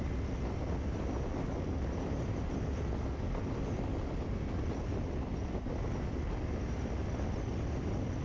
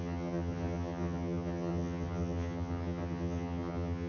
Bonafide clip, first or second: first